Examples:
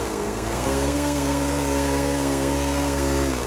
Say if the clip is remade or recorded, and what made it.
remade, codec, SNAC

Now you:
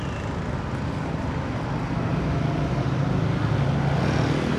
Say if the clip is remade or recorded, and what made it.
recorded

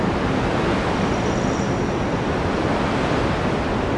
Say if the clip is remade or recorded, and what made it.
recorded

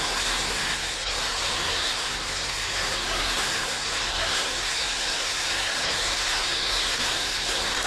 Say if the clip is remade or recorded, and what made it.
remade, codec, SNAC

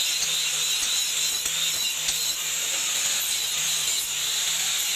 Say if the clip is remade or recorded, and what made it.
recorded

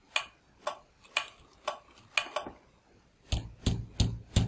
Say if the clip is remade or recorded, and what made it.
recorded